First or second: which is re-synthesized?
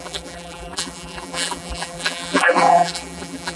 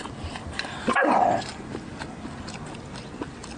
first